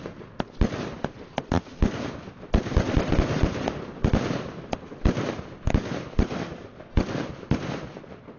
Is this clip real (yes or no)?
yes